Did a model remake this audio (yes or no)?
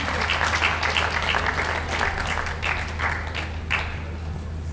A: no